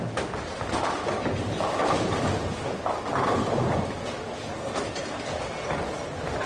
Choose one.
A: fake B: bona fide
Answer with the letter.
B